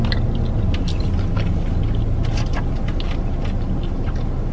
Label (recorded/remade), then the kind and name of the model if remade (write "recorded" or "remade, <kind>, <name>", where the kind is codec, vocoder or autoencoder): recorded